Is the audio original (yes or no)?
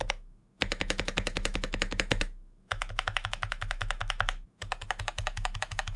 no